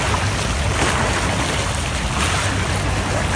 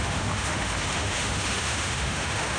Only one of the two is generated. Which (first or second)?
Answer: second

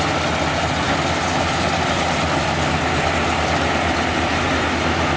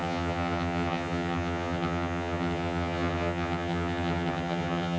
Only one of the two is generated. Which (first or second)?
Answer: second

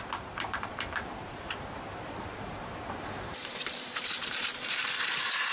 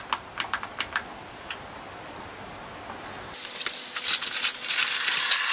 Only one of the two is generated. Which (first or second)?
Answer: first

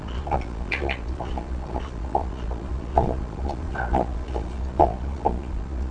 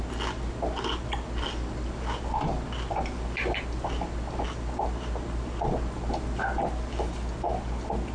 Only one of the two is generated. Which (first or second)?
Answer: first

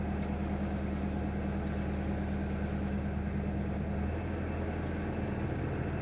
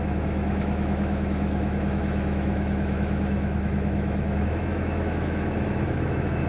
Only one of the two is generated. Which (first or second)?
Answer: second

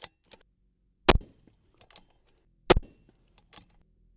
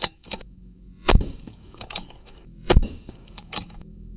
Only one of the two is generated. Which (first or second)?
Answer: second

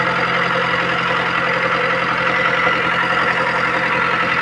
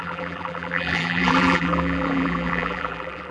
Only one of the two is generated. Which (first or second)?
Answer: second